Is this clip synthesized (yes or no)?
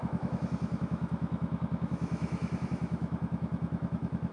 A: yes